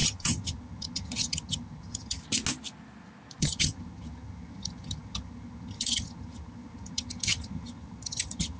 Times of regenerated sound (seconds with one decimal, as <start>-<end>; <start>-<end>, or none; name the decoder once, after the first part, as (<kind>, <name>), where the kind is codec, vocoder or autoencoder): 0.0-2.2 (vocoder, HiFi-GAN); 3.4-8.6